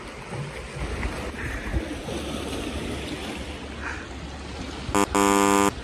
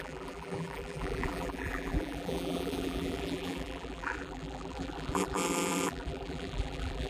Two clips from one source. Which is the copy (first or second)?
second